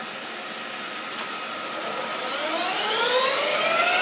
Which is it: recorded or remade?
recorded